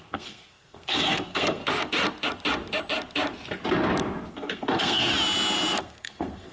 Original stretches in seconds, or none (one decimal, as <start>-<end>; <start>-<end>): 1.6-4.3; 5.1-5.8